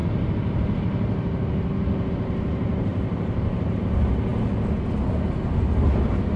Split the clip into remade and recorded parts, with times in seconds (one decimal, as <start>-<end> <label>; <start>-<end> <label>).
0.0-2.9 recorded; 2.9-3.8 remade; 3.8-6.4 recorded